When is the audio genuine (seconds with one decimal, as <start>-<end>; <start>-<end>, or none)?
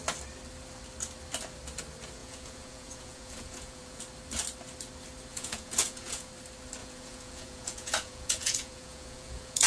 0.0-2.2; 4.0-5.3; 6.3-6.8